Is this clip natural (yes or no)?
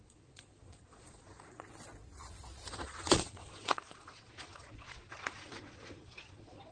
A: no